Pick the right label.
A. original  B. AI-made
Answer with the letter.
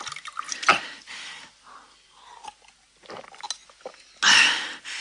A